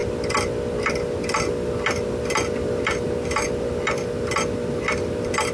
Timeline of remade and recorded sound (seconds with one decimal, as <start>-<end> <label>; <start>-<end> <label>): 0.0-5.5 recorded